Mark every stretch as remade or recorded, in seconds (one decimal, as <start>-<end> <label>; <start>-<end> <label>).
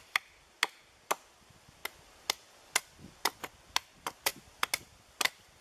0.0-5.6 recorded